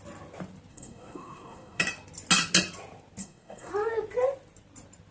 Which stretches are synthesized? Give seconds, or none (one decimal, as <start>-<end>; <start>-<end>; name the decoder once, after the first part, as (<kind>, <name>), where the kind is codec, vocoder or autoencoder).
0.7-1.8 (codec, SNAC); 3.2-3.7